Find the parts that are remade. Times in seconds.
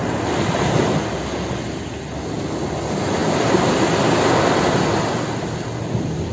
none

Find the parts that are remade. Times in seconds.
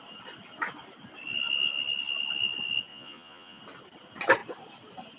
2.9-3.6 (vocoder, Vocos)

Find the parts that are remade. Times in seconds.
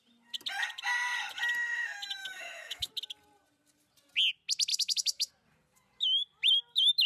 2.2-2.9 (autoencoder, DAC-VAE); 4.7-5.3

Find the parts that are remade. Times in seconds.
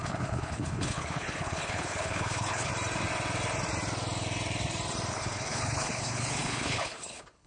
0.0-2.7 (codec, HILCodec); 5.1-7.5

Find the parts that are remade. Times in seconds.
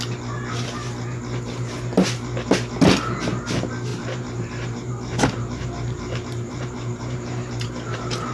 3.9-8.3 (vocoder, BigVGAN v2)